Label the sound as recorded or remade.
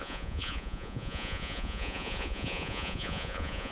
remade